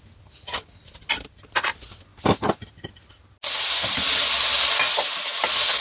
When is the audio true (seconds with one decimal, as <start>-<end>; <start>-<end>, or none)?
0.0-5.8